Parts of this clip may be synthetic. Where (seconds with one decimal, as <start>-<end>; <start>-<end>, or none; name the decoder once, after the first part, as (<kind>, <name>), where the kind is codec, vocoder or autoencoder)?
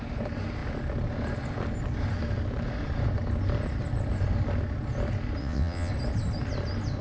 5.4-5.9 (vocoder, WaveNeXt)